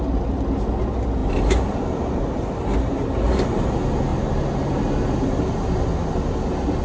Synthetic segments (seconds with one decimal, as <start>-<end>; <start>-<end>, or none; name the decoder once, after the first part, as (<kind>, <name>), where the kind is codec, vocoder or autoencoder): none